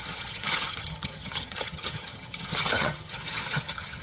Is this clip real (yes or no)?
no